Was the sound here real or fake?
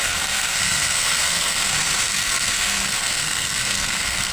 fake